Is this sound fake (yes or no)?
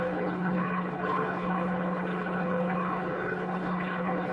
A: yes